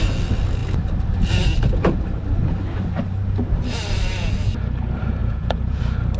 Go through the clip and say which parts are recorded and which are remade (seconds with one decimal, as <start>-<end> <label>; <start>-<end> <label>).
0.0-5.2 recorded; 5.2-5.8 remade; 5.8-6.2 recorded